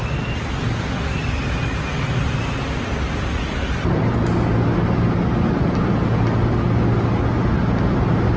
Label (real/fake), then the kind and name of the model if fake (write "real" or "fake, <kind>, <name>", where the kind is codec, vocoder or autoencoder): real